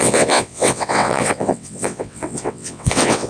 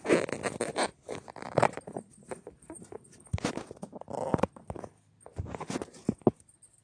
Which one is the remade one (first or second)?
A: first